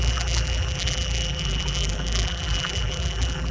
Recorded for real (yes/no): no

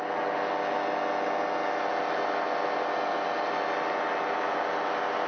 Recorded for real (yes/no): yes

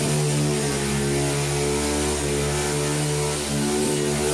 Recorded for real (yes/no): yes